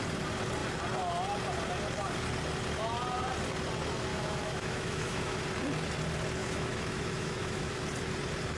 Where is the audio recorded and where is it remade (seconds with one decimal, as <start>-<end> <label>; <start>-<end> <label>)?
0.0-4.1 recorded; 4.1-5.4 remade; 5.4-6.4 recorded; 6.4-7.8 remade; 7.8-8.6 recorded